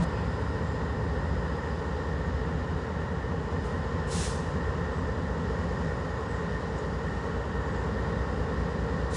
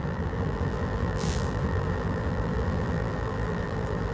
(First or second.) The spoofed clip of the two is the second